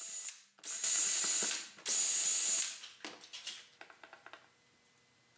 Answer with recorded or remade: recorded